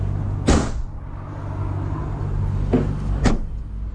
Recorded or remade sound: recorded